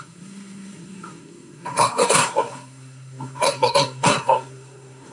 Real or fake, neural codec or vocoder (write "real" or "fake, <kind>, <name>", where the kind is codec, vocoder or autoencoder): fake, codec, SNAC